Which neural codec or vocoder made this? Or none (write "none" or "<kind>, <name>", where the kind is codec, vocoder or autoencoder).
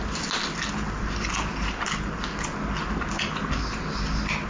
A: none